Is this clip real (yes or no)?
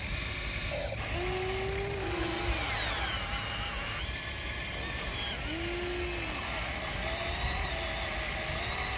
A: yes